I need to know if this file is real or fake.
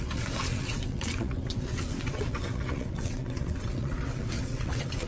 fake